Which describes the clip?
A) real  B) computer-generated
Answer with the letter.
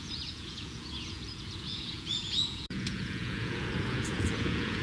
B